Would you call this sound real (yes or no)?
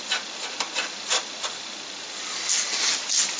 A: yes